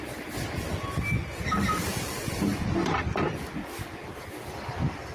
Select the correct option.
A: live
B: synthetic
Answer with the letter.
A